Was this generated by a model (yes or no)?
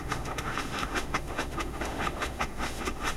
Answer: yes